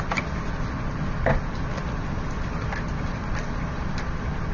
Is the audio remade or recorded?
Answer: recorded